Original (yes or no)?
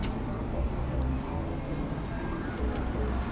yes